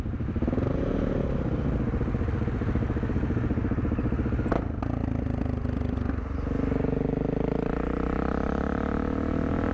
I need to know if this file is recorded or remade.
recorded